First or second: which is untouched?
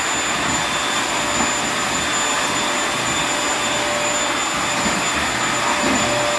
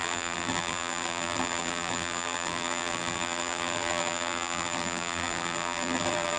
first